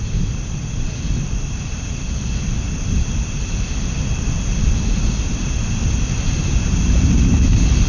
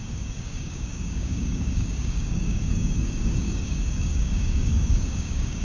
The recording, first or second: first